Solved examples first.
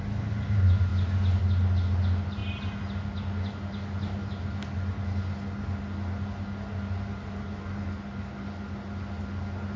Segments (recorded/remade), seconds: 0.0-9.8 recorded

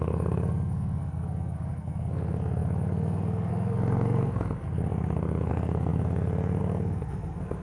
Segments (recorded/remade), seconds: 0.0-7.6 remade

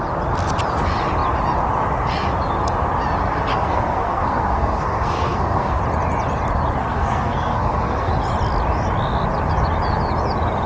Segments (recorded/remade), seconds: 0.0-3.5 recorded; 3.5-5.8 remade; 5.8-6.8 recorded; 6.8-8.1 remade; 8.1-10.7 recorded

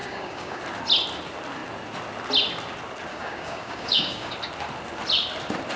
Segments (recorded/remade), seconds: 0.0-0.6 remade; 0.6-3.1 recorded; 3.1-4.3 remade; 4.3-5.8 recorded

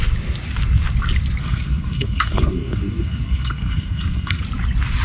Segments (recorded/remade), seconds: 0.0-1.4 recorded; 1.4-4.4 remade; 4.4-5.0 recorded

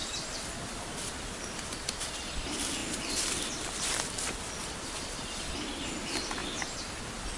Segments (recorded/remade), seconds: 0.0-1.6 remade; 1.6-2.8 recorded; 2.8-5.5 remade; 5.5-7.4 recorded